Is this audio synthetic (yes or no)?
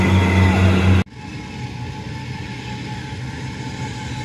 no